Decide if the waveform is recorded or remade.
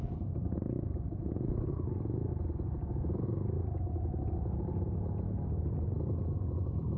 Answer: recorded